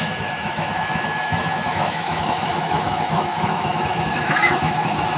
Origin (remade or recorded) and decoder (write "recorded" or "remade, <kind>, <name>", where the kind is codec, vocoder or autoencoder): remade, autoencoder, DAC-VAE